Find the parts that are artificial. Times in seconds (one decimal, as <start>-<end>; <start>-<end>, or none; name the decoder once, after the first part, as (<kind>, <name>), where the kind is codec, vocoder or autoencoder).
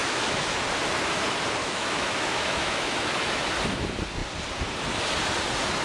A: 0.0-0.6 (autoencoder, DAC-VAE); 1.6-3.5